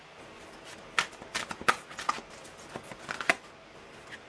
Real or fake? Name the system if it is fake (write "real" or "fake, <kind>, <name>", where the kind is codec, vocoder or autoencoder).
real